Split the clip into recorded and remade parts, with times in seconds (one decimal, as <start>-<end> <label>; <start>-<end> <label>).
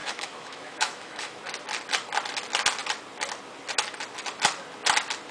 0.0-1.4 remade; 1.4-5.3 recorded